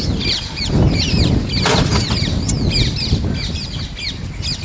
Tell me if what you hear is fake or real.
real